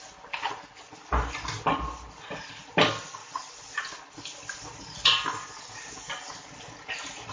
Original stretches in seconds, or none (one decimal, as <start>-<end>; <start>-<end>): 0.0-7.3